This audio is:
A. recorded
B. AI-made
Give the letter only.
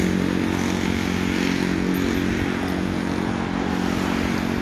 A